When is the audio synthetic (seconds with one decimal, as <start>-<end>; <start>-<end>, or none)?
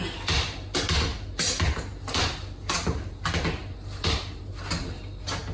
3.6-4.5